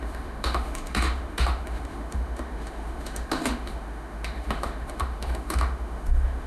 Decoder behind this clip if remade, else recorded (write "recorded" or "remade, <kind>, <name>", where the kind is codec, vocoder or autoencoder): remade, autoencoder, DAC-VAE